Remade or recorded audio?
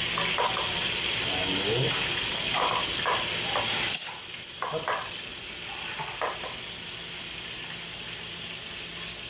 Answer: recorded